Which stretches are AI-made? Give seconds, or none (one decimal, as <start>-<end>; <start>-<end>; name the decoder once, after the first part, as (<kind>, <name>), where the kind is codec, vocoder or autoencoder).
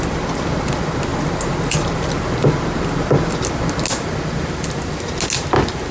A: none